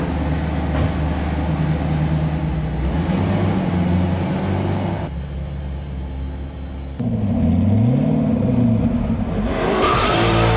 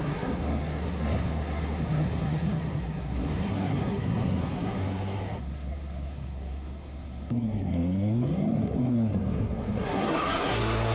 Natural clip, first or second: first